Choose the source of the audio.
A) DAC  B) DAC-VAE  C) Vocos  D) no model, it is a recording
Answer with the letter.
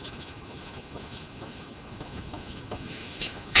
B